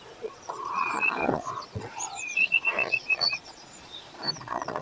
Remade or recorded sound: remade